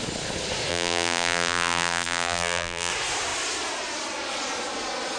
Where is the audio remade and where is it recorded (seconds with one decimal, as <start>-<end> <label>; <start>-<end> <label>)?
0.0-0.7 recorded; 0.7-2.9 remade; 2.9-5.2 recorded